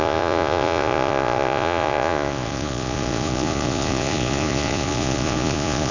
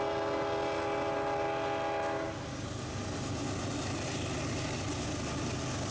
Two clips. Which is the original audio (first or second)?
second